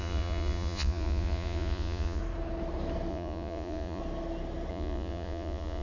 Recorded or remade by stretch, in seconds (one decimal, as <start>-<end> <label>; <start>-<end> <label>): 0.0-2.2 remade; 2.2-3.1 recorded; 3.1-4.0 remade; 4.0-4.7 recorded; 4.7-5.8 remade